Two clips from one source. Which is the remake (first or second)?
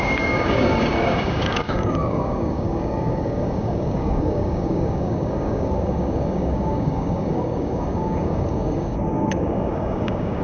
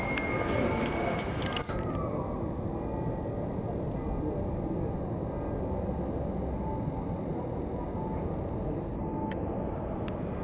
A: first